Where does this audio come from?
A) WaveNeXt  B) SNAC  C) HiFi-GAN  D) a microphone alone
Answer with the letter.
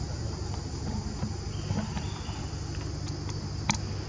D